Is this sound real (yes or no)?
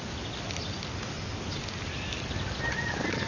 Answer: yes